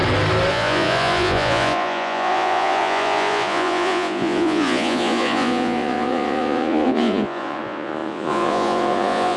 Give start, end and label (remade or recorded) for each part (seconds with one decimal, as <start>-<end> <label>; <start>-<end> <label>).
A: 0.0-0.5 recorded; 0.5-9.4 remade